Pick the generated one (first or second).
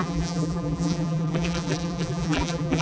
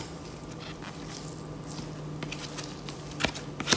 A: first